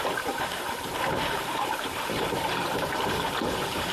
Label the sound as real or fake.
fake